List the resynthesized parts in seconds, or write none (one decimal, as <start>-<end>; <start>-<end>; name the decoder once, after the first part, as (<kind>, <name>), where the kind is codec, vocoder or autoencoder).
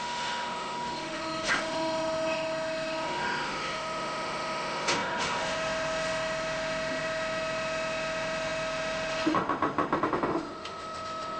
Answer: 0.0-11.4 (autoencoder, DAC-VAE)